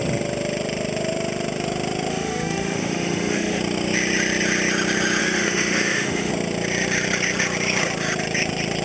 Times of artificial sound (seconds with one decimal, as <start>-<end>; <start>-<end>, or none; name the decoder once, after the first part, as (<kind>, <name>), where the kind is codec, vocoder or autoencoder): 2.1-3.6 (autoencoder, DAC-VAE); 5.2-6.3